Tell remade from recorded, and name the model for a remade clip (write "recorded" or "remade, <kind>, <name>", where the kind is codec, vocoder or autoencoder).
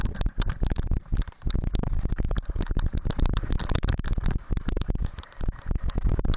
remade, vocoder, BigVGAN v2